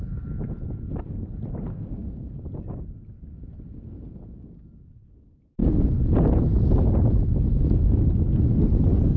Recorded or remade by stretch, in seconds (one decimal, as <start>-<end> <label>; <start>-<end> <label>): 0.0-1.7 recorded; 1.7-2.3 remade; 2.3-9.2 recorded